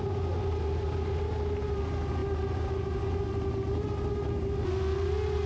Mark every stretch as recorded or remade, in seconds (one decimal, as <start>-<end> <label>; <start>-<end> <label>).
0.0-5.5 recorded